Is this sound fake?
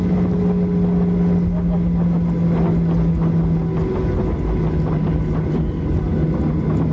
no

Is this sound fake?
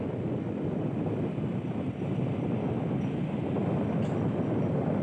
no